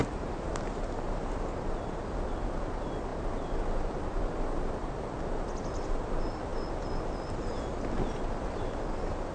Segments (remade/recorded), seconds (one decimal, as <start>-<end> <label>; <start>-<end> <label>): 0.0-1.4 remade; 1.4-9.3 recorded